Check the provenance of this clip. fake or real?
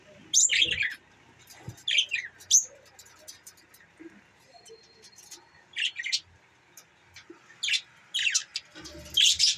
real